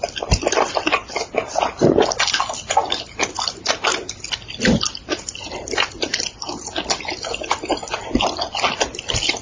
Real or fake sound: real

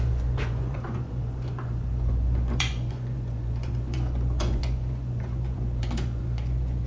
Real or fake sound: fake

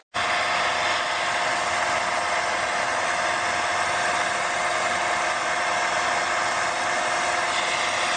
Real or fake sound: real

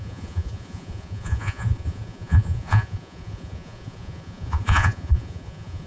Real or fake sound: fake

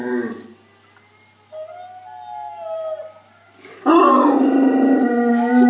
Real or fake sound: real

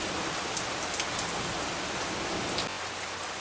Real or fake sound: real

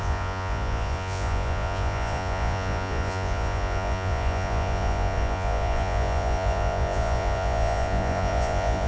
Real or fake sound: fake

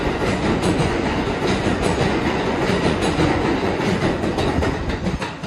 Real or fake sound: fake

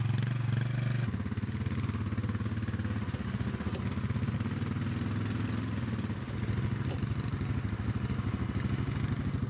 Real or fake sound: real